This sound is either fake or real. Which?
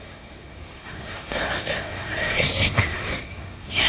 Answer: fake